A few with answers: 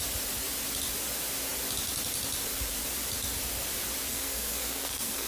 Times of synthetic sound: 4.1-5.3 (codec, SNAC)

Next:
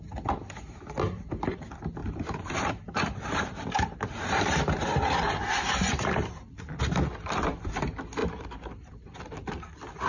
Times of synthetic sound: 2.0-6.6 (vocoder, BigVGAN v2); 8.2-9.2